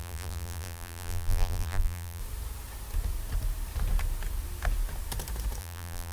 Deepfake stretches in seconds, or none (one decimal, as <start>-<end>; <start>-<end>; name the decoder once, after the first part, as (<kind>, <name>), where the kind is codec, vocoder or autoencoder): 0.0-2.2 (vocoder, BigVGAN v2); 5.6-6.1